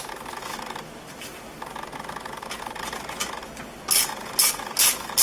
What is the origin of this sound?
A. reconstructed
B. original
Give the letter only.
B